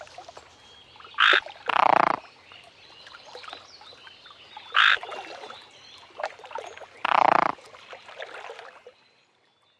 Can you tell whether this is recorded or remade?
recorded